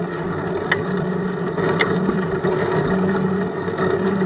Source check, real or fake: real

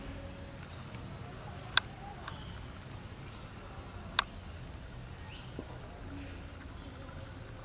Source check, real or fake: real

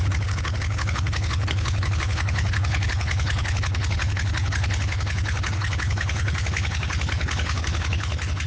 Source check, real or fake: fake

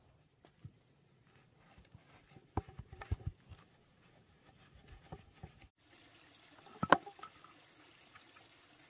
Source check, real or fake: real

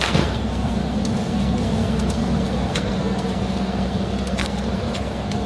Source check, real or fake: fake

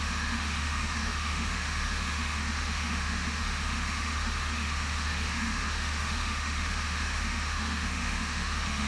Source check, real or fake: fake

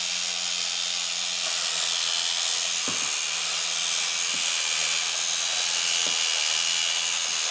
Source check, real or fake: real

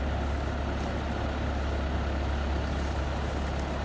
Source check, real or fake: real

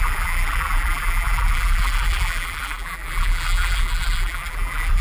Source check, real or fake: fake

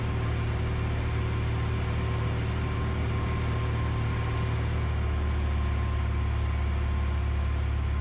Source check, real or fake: real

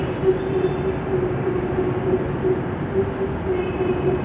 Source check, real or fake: fake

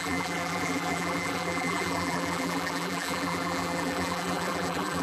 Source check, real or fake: fake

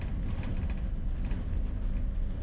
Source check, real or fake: real